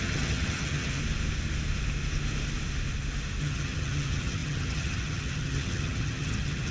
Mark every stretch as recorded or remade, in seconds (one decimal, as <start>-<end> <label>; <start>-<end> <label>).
0.0-1.0 remade; 1.0-3.4 recorded; 3.4-6.7 remade